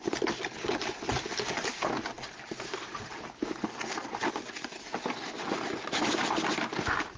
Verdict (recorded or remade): recorded